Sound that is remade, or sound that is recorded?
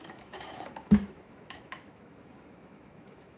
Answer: remade